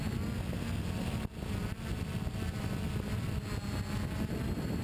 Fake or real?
real